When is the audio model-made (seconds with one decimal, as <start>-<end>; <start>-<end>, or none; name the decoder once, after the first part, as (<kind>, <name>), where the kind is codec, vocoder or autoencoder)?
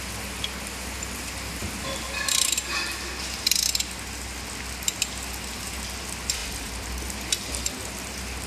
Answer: none